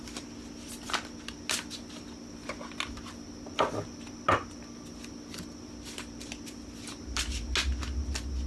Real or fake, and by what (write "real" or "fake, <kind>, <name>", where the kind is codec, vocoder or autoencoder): real